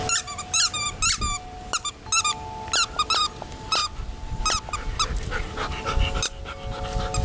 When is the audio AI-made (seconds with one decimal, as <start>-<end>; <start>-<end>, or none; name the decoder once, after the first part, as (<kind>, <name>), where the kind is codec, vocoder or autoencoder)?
none